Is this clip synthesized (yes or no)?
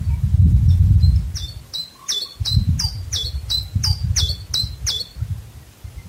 no